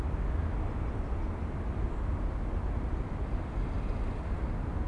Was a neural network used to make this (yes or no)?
no